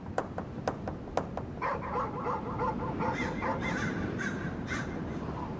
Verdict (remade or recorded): recorded